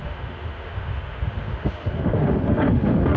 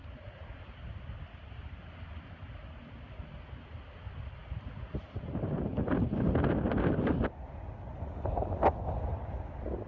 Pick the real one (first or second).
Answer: second